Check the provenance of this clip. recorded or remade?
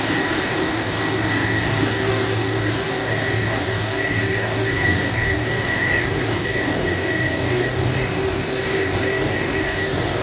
remade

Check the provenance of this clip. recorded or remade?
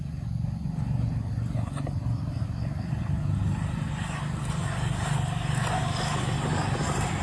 recorded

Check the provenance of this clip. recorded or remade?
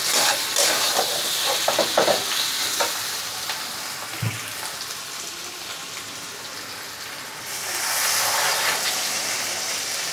remade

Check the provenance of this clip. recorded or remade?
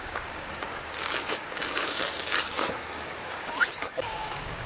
remade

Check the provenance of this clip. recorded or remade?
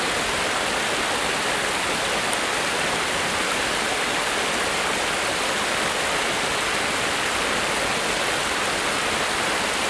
recorded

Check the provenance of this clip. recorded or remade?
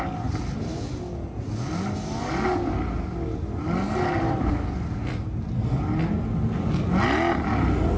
recorded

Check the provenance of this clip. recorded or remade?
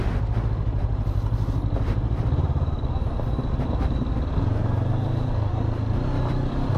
recorded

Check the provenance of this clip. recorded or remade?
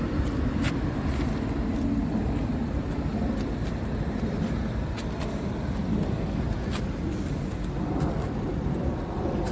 recorded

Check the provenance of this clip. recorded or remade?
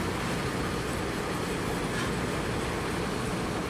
recorded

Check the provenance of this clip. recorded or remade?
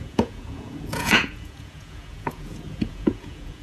remade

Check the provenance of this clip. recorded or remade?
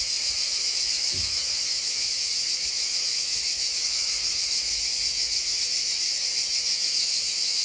remade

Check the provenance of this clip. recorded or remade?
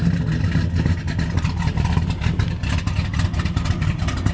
recorded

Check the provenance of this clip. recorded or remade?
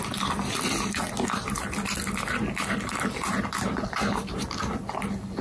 recorded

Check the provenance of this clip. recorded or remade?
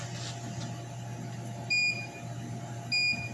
recorded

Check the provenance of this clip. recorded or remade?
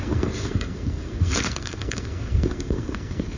remade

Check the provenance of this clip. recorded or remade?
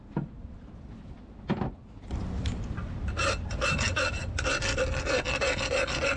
recorded